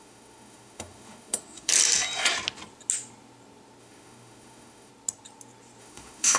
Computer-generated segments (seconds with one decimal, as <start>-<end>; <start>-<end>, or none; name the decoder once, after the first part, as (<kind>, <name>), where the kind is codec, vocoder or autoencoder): 0.0-1.7 (autoencoder, DAC-VAE); 3.8-4.9; 5.8-6.4